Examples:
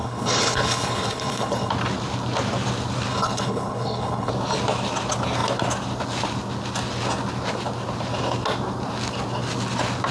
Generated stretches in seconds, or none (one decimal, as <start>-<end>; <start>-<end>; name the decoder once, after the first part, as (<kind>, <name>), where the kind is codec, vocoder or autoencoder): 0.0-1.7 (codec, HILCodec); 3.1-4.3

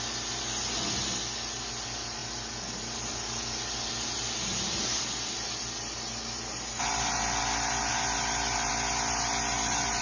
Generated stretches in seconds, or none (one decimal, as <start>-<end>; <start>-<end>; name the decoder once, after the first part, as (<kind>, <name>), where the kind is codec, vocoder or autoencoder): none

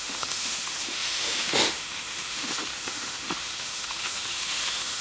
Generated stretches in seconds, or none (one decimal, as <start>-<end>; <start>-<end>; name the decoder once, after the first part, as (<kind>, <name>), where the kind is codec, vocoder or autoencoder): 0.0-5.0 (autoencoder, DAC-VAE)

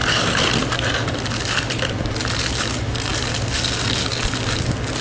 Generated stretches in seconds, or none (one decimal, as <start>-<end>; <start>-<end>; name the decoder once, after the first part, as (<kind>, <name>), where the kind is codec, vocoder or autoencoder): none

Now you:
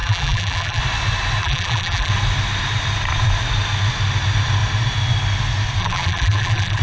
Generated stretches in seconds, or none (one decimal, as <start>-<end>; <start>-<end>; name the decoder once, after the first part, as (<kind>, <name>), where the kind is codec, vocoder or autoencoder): 0.0-0.8 (vocoder, BigVGAN v2); 1.4-2.1; 5.8-6.8

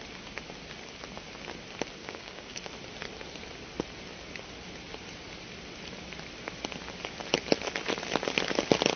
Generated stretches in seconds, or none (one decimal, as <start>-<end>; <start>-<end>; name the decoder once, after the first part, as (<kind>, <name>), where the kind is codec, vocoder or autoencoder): 2.0-2.7 (codec, DAC)

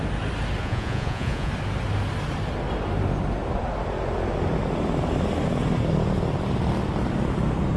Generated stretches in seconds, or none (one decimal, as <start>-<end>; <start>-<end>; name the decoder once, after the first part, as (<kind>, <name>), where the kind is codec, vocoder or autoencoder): 0.6-1.5 (vocoder, Vocos)

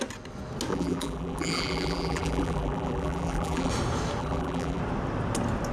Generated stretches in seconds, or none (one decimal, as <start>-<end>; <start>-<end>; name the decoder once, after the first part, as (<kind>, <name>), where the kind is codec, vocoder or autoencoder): 0.7-3.7 (vocoder, BigVGAN v2); 4.2-4.8